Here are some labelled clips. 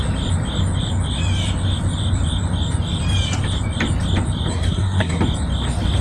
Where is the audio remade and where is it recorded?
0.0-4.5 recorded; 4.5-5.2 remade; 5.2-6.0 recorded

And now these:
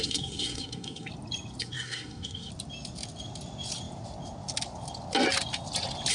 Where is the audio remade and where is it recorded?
0.0-1.1 remade; 1.1-1.6 recorded; 1.6-2.5 remade; 2.5-6.1 recorded

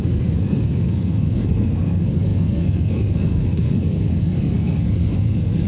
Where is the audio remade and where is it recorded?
0.0-5.7 remade

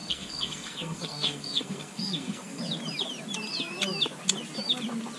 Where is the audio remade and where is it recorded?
0.0-2.6 remade; 2.6-5.2 recorded

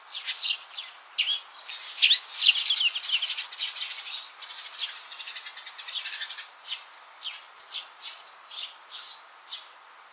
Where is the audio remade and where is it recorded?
0.0-10.1 recorded